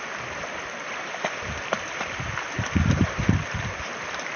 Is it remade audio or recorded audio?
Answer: recorded